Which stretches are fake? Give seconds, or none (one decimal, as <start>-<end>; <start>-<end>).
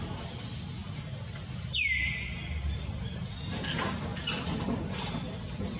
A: 4.1-5.2